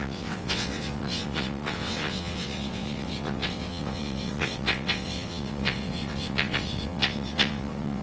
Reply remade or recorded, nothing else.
remade